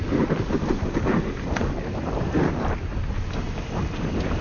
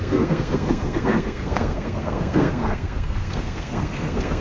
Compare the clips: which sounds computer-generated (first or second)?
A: second